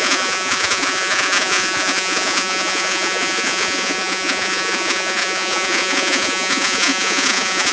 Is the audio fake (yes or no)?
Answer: yes